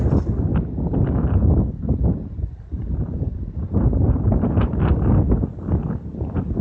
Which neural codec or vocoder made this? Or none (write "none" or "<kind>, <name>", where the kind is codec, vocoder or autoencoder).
none